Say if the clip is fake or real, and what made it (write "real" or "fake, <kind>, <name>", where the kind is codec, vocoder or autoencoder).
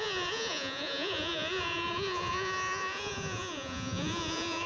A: fake, vocoder, Vocos